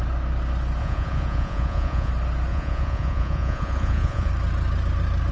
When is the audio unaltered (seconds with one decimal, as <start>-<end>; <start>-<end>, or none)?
0.0-0.8; 2.1-2.5; 4.3-5.3